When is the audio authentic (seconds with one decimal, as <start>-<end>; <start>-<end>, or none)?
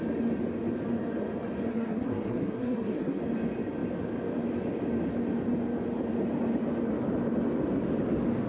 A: 0.0-1.7; 3.2-8.5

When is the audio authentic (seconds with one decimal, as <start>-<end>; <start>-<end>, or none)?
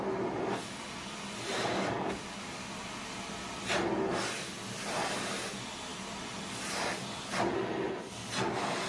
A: 0.0-8.9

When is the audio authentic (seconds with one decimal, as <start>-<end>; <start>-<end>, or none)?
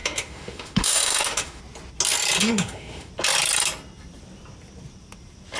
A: 1.6-2.4; 3.1-5.6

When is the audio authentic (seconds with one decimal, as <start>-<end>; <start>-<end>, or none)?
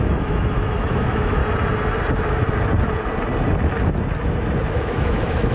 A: 1.4-4.7